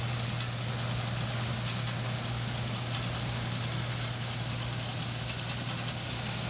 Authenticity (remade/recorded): recorded